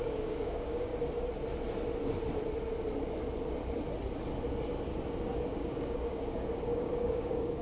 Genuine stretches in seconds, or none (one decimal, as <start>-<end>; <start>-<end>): 0.9-5.5